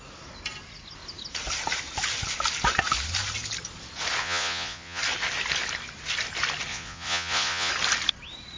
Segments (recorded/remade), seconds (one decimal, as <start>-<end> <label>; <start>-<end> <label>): 0.0-4.2 recorded; 4.2-5.0 remade; 5.0-6.7 recorded; 6.7-7.7 remade; 7.7-8.6 recorded